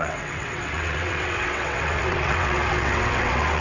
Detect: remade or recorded remade